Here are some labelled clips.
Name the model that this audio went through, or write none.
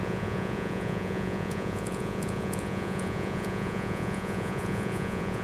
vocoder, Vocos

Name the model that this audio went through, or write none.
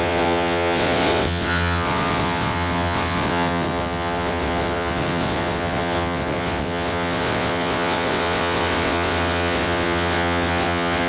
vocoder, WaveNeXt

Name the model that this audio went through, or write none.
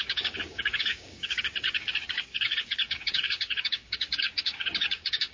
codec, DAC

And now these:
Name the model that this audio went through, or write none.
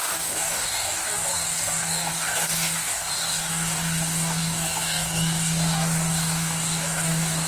codec, DAC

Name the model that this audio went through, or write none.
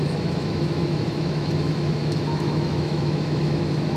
autoencoder, DAC-VAE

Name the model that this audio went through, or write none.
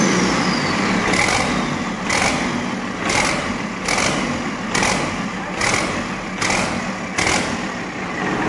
none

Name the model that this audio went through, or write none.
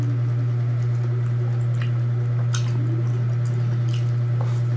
none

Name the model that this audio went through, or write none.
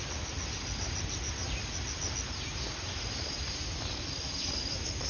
none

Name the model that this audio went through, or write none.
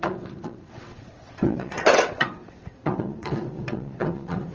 vocoder, WaveNeXt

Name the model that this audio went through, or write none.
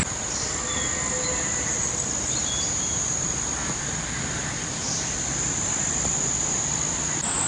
none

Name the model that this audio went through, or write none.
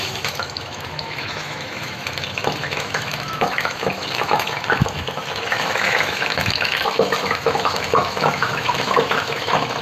autoencoder, DAC-VAE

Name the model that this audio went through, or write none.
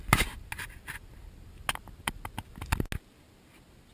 none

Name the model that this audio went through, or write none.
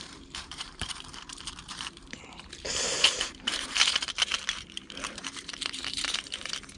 vocoder, BigVGAN v2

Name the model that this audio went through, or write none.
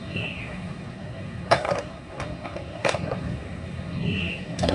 codec, SNAC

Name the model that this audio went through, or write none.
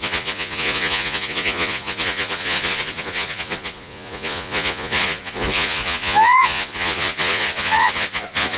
vocoder, Vocos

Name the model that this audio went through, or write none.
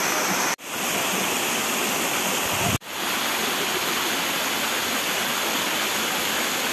none